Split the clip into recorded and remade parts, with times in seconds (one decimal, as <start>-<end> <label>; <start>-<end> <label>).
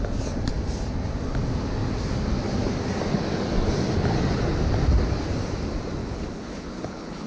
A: 0.0-6.0 recorded; 6.0-7.3 remade